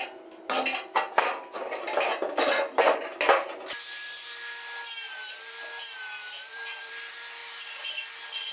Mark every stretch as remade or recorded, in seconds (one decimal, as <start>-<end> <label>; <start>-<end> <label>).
0.0-2.1 recorded; 2.1-3.0 remade; 3.0-6.2 recorded; 6.2-6.9 remade; 6.9-7.4 recorded; 7.4-7.9 remade; 7.9-8.5 recorded